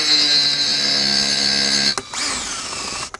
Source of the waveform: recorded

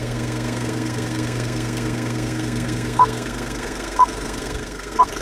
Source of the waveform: remade